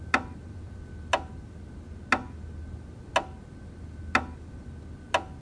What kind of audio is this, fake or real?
real